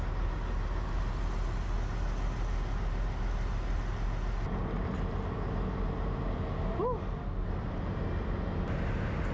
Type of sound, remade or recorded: recorded